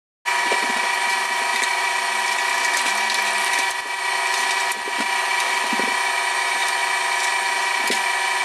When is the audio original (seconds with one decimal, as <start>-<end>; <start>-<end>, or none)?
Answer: 0.0-8.4